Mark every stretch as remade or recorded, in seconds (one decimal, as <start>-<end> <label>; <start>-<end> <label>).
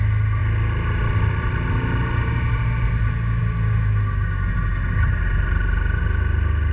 0.0-6.7 recorded